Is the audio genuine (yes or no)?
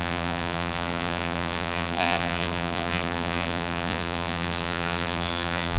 no